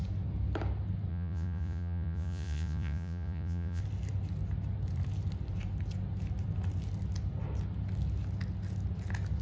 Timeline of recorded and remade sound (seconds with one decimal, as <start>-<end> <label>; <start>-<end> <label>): 0.0-1.1 recorded; 1.1-3.8 remade; 3.8-9.4 recorded